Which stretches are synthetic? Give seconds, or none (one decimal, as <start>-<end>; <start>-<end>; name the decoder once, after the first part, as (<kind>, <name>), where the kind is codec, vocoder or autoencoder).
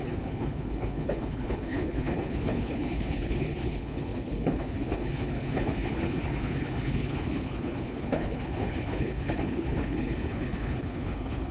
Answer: 0.0-11.5 (codec, HILCodec)